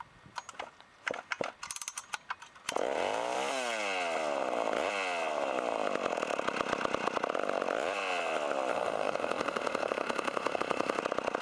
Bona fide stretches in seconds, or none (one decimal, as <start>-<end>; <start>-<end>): 0.0-8.7; 11.0-11.4

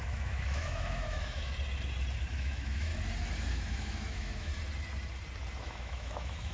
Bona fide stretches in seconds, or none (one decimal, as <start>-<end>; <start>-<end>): 1.5-2.3; 2.9-3.5; 4.5-5.6

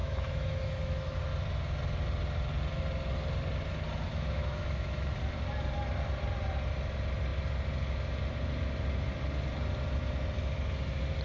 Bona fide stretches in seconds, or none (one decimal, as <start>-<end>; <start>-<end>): 1.2-4.1; 5.2-11.2

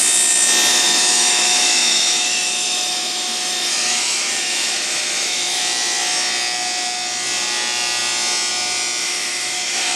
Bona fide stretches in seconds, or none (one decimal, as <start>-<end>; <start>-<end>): 0.0-0.7; 5.6-9.0

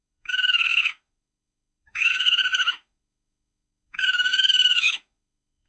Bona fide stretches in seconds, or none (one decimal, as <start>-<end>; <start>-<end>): none

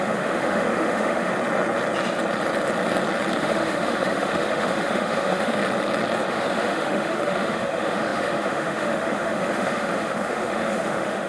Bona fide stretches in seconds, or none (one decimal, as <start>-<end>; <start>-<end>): 1.3-3.4; 5.6-6.3